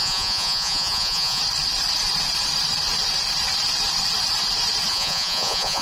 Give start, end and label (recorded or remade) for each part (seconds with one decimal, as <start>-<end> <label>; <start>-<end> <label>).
0.0-1.4 remade; 1.4-4.9 recorded; 4.9-5.8 remade